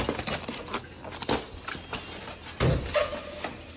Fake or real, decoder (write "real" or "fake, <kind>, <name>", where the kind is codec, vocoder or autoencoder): real